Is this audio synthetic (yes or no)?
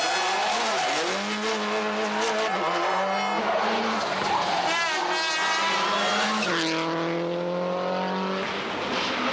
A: no